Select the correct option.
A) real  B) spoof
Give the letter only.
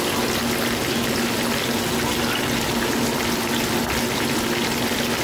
A